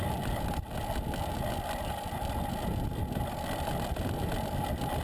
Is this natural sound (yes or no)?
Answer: yes